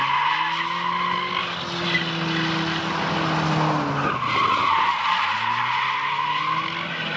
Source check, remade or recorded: recorded